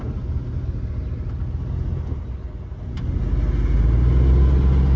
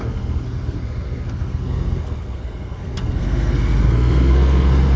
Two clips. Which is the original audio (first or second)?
first